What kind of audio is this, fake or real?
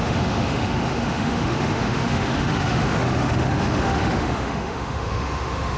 fake